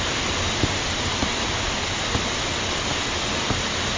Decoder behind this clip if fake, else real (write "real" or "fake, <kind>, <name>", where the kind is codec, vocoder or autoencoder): real